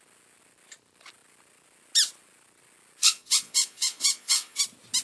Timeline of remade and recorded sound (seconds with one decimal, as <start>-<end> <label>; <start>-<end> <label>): 0.0-3.0 recorded; 3.0-4.6 remade; 4.6-5.0 recorded